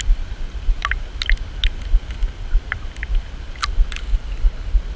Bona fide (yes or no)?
yes